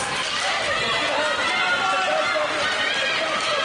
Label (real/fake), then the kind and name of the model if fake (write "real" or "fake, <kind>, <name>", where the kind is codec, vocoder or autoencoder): real